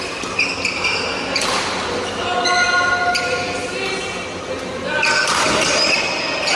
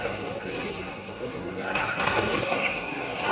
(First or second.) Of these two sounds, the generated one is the second